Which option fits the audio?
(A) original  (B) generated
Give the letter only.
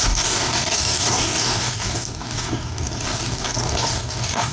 B